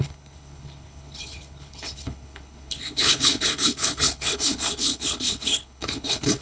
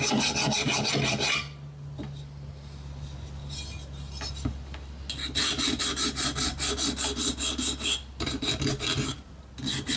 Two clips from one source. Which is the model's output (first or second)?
first